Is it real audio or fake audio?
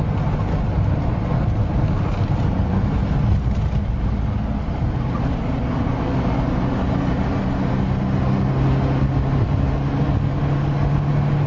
real